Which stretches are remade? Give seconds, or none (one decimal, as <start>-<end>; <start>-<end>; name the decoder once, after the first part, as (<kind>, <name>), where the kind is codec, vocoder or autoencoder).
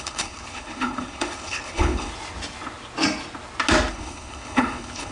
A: 0.0-2.1 (codec, HILCodec); 3.9-5.1